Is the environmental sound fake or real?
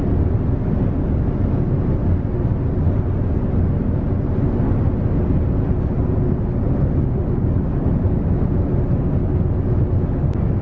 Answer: real